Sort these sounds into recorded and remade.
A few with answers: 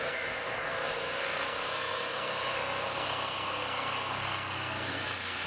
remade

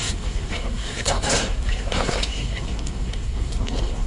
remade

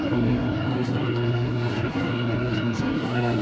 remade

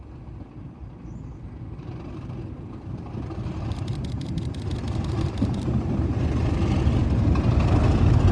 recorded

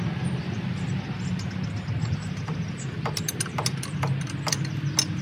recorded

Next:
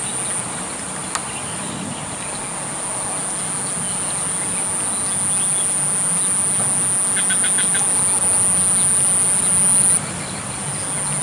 recorded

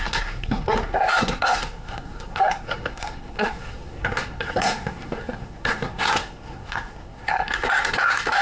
remade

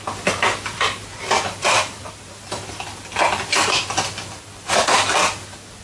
recorded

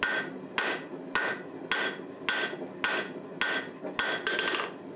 recorded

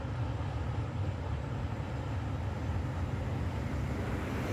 recorded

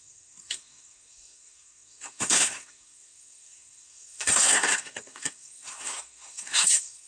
remade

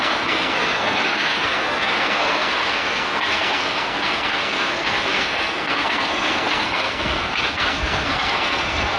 remade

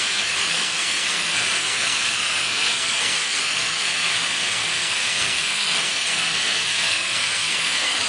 remade